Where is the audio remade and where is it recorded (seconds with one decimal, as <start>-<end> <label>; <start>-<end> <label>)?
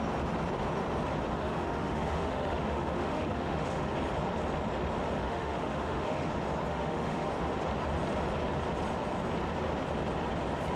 0.0-1.3 recorded; 1.3-3.9 remade; 3.9-5.2 recorded; 5.2-6.3 remade; 6.3-6.7 recorded; 6.7-7.3 remade; 7.3-10.8 recorded